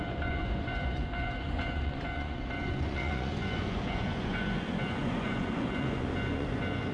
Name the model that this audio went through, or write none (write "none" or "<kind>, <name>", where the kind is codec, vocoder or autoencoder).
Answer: vocoder, Vocos